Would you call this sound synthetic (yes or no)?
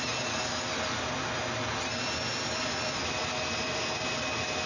no